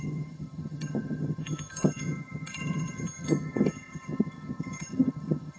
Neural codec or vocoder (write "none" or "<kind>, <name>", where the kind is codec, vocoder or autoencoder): vocoder, HiFi-GAN